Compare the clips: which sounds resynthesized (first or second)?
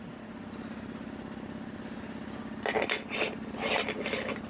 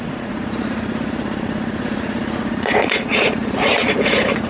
second